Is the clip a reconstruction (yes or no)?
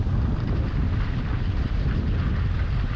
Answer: no